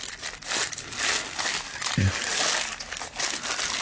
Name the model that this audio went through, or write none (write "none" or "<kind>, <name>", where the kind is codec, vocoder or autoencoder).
none